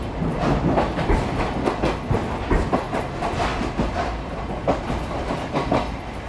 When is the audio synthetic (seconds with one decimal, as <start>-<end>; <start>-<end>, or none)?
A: none